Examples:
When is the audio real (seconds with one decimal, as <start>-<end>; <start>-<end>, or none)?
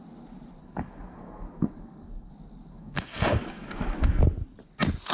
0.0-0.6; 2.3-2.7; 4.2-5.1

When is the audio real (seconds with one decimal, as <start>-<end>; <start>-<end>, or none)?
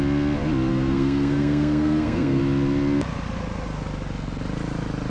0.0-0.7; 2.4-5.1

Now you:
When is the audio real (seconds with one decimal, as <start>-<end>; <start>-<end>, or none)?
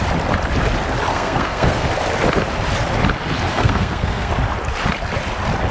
0.0-1.1; 1.9-3.5; 4.3-5.7